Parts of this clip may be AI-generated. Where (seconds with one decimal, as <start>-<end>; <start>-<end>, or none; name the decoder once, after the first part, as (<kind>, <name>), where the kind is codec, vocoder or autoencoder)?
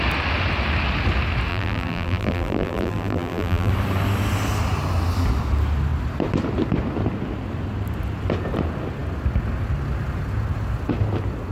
1.5-3.7 (vocoder, BigVGAN v2)